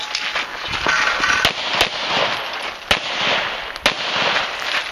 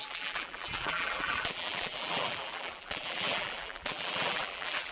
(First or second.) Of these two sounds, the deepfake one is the second